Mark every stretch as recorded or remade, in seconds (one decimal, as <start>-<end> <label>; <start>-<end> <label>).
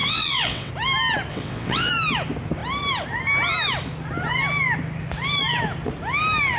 0.0-0.7 remade; 0.7-1.3 recorded; 1.3-1.9 remade; 1.9-6.6 recorded